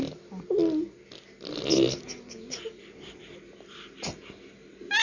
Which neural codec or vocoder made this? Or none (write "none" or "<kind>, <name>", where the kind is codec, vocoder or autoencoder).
none